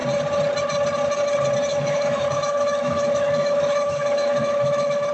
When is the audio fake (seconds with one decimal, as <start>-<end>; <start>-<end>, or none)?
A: 1.7-5.1